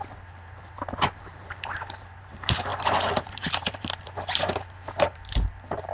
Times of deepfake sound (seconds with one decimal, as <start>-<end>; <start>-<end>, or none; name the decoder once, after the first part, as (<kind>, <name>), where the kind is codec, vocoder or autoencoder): 0.0-5.9 (vocoder, BigVGAN v2)